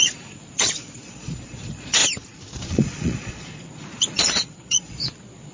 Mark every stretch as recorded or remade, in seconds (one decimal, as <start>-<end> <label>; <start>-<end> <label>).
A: 0.0-2.0 remade; 2.0-2.6 recorded; 2.6-5.5 remade